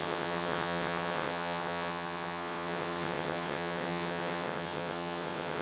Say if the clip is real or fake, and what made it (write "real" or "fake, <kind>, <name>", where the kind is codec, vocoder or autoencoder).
fake, vocoder, WaveNeXt